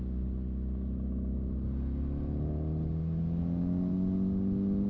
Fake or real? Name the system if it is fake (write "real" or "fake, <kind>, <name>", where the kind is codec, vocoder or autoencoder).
real